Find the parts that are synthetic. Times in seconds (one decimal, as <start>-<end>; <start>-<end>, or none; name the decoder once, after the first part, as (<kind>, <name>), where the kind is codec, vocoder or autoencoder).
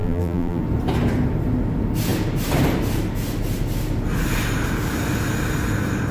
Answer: 0.0-0.6 (vocoder, BigVGAN v2)